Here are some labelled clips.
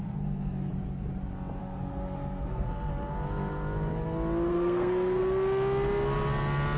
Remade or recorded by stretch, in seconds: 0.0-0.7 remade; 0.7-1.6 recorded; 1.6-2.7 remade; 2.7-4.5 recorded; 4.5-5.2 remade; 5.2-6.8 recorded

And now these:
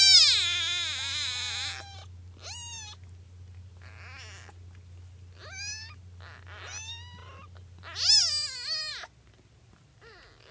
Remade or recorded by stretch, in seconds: 0.0-10.5 recorded

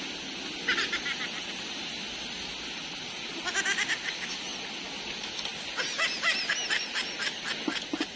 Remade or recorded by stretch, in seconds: 0.0-8.2 recorded

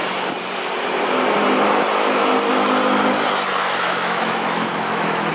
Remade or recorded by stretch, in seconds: 0.0-3.6 recorded; 3.6-5.3 remade

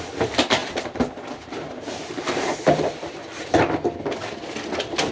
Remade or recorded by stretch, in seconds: 0.0-0.6 recorded; 0.6-3.7 remade; 3.7-5.1 recorded

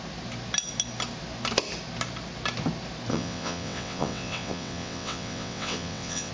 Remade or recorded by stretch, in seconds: 0.0-3.1 recorded; 3.1-6.3 remade

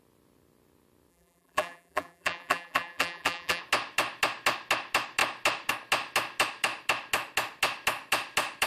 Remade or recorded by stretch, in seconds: 0.0-1.1 recorded; 1.1-3.6 remade; 3.6-8.7 recorded